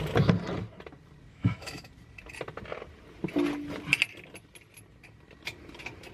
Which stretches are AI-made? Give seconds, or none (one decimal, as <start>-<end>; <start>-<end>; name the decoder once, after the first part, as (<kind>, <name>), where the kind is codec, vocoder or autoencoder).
1.3-1.9 (autoencoder, DAC-VAE)